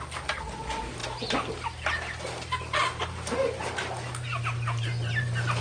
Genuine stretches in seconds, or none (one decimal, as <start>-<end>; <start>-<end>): none